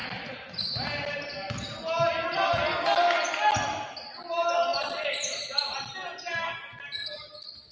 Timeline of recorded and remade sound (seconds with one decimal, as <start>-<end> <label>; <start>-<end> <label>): 0.0-4.7 recorded; 4.7-5.9 remade; 5.9-7.7 recorded